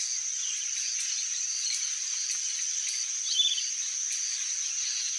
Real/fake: real